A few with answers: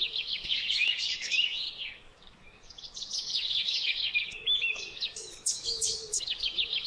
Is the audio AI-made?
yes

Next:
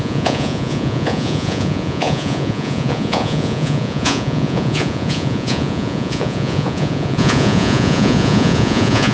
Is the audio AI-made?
yes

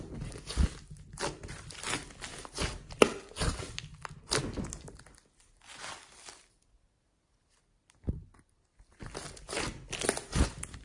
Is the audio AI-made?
no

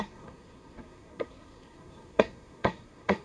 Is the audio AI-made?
yes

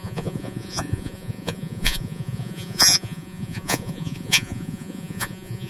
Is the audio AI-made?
yes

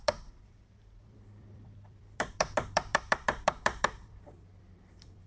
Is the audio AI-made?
yes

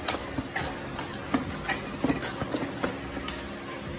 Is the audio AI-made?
no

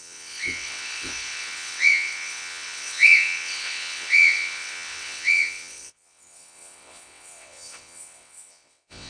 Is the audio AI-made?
yes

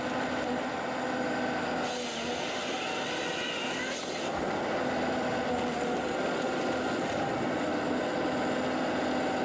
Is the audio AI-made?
no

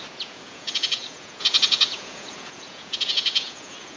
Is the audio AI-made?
yes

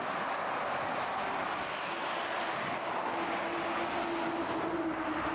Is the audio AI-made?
no